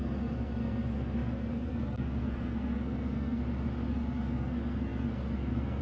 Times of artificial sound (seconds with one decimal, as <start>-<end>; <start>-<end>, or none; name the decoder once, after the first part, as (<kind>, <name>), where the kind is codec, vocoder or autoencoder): 0.0-3.4 (codec, SNAC); 3.9-5.8